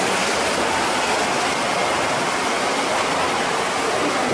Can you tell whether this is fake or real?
real